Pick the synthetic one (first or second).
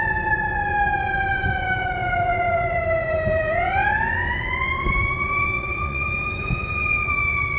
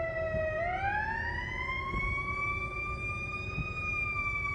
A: first